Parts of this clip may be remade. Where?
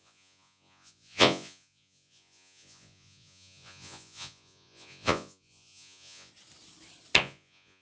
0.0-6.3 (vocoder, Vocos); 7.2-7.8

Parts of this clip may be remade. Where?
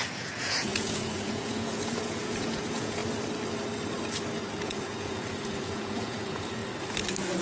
0.0-3.0 (vocoder, Vocos); 4.6-6.6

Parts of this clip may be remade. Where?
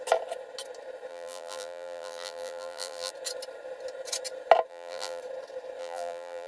1.1-3.1 (vocoder, BigVGAN v2); 4.7-5.2; 5.8-6.5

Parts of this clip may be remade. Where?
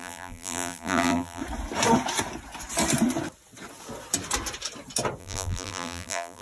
0.0-1.4 (vocoder, BigVGAN v2); 5.2-6.4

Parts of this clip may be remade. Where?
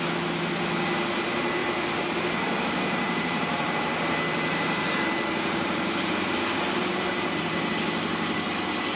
1.6-6.1 (vocoder, BigVGAN v2); 6.8-7.7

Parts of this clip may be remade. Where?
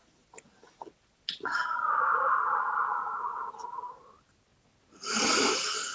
none